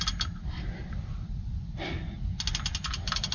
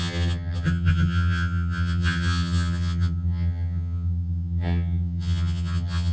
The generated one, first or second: second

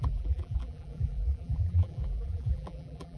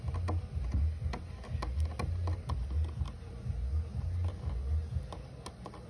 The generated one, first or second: first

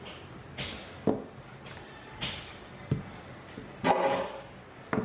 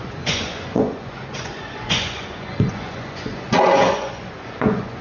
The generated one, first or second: second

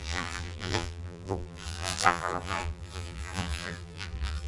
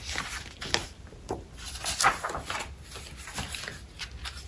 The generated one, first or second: first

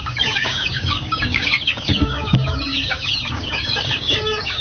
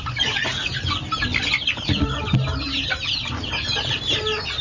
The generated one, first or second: first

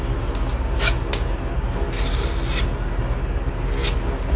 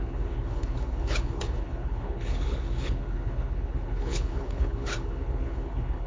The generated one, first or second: second